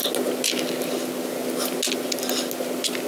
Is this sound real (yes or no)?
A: yes